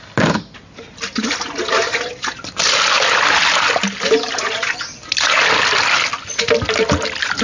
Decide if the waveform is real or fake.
real